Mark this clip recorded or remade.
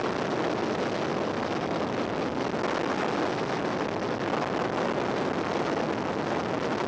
recorded